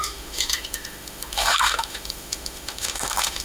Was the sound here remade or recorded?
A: remade